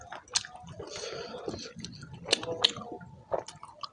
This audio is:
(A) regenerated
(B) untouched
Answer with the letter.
B